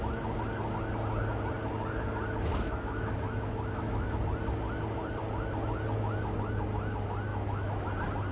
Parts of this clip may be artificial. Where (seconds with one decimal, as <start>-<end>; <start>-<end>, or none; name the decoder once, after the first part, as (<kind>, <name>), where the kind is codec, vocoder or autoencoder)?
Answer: 2.5-4.2 (autoencoder, DAC-VAE); 7.3-7.9